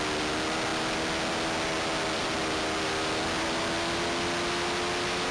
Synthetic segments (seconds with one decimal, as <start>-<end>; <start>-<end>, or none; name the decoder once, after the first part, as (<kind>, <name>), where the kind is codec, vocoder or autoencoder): none